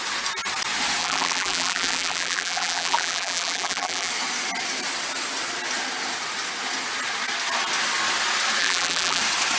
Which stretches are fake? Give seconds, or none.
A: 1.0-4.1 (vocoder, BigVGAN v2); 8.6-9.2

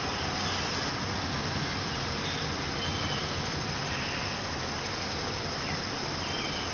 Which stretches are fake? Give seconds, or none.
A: none

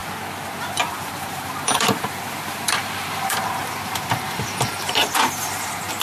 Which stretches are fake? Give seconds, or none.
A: 0.8-6.0 (vocoder, BigVGAN v2)

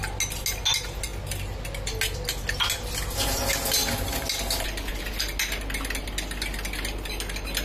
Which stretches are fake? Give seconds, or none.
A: none

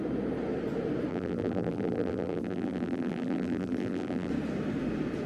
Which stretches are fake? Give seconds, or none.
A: 1.1-4.3 (vocoder, BigVGAN v2)